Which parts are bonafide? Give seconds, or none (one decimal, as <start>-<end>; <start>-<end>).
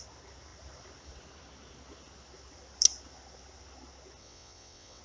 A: 0.0-4.2